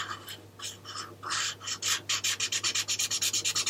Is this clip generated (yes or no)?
no